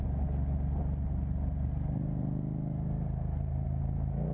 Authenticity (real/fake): real